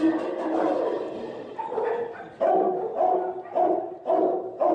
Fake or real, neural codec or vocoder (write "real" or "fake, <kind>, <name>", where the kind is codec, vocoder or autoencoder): real